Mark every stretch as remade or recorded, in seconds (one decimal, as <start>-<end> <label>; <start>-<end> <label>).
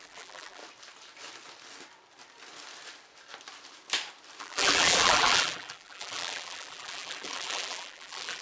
0.0-0.6 remade; 0.6-4.4 recorded; 4.4-8.4 remade